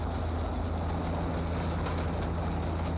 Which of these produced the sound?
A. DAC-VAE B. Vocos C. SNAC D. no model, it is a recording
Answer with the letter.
D